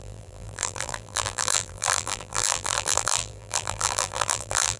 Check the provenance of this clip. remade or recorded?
remade